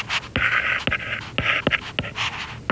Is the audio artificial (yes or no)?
no